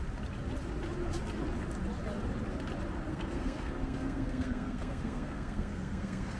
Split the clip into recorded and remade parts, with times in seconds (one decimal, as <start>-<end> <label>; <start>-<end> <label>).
0.0-3.1 recorded; 3.1-6.4 remade